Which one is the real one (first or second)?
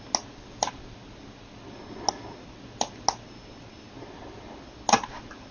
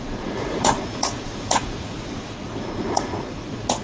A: first